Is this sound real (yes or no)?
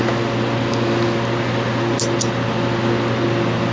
yes